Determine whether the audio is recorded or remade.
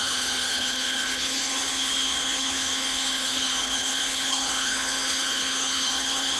remade